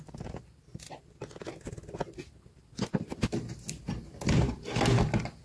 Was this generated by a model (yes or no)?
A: no